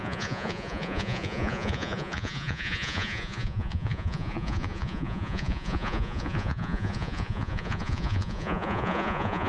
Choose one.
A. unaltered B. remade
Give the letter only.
B